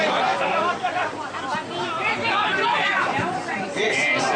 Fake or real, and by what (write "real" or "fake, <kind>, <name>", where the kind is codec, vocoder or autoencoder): fake, vocoder, BigVGAN v2